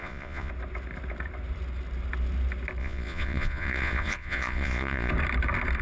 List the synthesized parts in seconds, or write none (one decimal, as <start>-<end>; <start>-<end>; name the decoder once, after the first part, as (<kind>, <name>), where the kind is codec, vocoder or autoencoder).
0.0-0.5 (vocoder, Vocos); 2.8-5.1